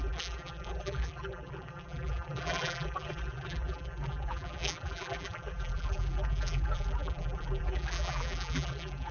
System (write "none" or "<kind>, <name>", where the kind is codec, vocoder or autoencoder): vocoder, BigVGAN v2